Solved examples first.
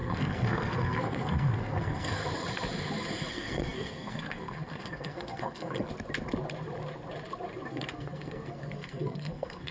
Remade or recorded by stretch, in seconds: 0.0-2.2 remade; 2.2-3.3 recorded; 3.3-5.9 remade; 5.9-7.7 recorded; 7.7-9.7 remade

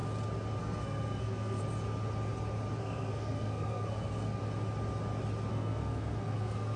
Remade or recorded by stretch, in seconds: 0.0-0.6 recorded; 0.6-1.6 remade; 1.6-2.8 recorded; 2.8-4.4 remade; 4.4-5.5 recorded; 5.5-6.8 remade

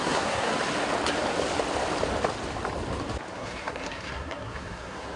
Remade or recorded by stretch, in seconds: 0.0-0.5 remade; 0.5-3.3 recorded; 3.3-5.2 remade

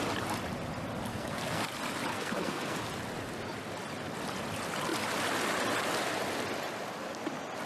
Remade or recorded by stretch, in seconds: 0.0-1.1 recorded; 1.1-1.7 remade; 1.7-2.1 recorded; 2.1-2.8 remade; 2.8-7.7 recorded

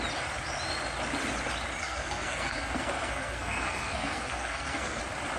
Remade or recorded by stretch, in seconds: 0.0-1.8 recorded; 1.8-5.0 remade; 5.0-5.4 recorded